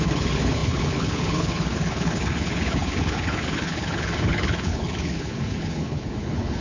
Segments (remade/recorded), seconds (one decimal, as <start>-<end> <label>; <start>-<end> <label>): 0.0-6.6 remade